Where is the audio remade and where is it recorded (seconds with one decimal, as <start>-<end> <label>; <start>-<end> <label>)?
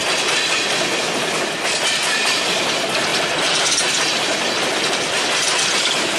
0.0-6.2 recorded